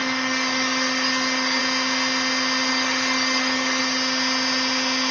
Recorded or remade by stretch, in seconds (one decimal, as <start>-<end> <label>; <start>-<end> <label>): 0.0-1.6 remade; 1.6-2.7 recorded; 2.7-3.8 remade; 3.8-5.1 recorded